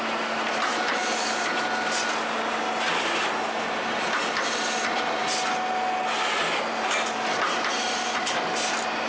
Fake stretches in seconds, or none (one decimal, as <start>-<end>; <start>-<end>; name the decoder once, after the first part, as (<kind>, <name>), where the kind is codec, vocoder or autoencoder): none